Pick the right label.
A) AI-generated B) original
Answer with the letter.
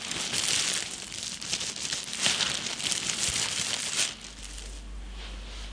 B